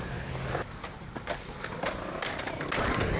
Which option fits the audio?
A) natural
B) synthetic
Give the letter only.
A